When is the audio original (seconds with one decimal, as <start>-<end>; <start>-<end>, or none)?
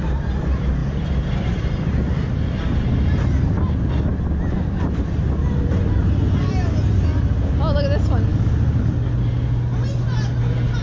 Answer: 0.0-0.8; 2.6-10.8